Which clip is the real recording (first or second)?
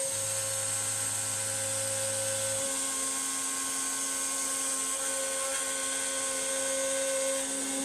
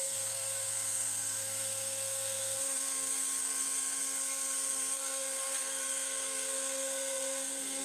first